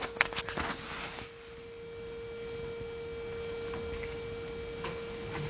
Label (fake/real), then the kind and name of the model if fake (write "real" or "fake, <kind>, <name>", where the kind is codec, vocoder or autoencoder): real